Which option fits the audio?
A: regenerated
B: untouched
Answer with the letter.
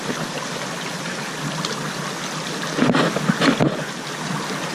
B